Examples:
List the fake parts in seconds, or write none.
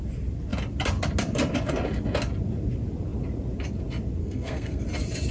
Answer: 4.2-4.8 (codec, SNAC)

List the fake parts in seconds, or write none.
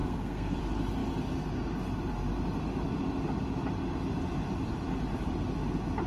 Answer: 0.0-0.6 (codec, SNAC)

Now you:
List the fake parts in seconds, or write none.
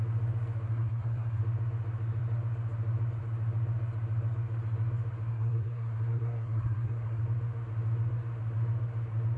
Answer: 0.7-1.4 (codec, SNAC); 5.3-7.2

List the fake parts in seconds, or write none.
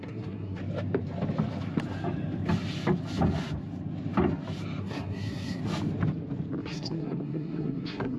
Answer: 0.0-0.6 (codec, SNAC); 4.8-5.6; 6.6-8.2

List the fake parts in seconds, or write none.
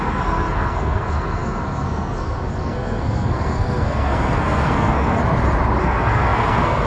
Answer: 0.0-5.2 (codec, SNAC); 5.8-6.9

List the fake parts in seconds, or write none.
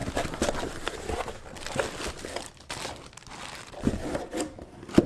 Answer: none